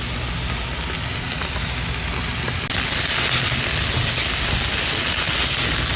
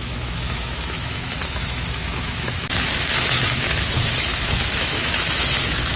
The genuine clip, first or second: first